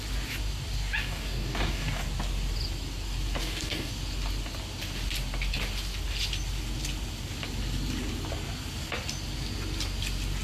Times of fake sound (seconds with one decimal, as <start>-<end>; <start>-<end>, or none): 1.0-2.0; 3.4-3.9